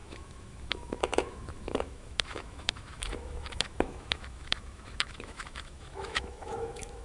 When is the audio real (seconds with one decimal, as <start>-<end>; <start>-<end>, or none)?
none